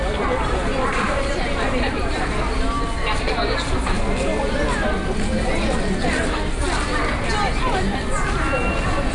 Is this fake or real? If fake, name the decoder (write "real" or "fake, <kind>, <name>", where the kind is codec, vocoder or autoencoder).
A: real